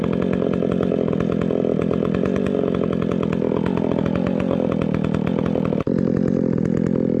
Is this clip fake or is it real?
real